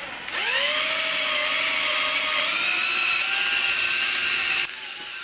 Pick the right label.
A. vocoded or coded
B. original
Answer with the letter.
B